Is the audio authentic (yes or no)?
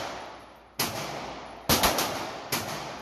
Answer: yes